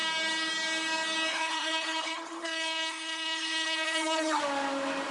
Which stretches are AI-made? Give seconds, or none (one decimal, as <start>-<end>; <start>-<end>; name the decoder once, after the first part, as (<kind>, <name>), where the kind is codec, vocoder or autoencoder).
1.3-4.4 (codec, HILCodec)